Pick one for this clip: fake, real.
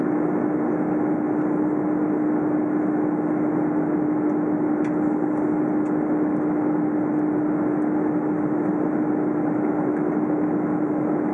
real